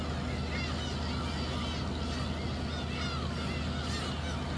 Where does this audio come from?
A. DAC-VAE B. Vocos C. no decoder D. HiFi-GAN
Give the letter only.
C